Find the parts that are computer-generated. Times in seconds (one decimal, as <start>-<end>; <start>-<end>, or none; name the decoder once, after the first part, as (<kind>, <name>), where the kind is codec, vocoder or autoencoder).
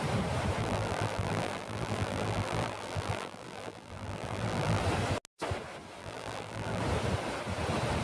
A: 0.6-4.8 (vocoder, BigVGAN v2); 6.0-6.8